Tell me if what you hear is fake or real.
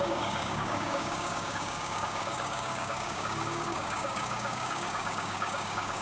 fake